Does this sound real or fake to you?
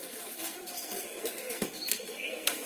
fake